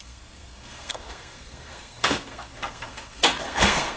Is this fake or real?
fake